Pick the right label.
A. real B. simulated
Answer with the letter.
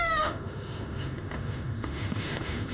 B